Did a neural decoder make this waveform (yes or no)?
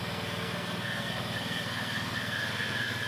yes